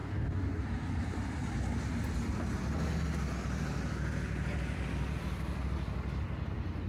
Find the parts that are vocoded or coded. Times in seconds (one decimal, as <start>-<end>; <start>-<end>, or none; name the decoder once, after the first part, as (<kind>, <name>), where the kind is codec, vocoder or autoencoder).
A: 0.0-0.6 (codec, DAC)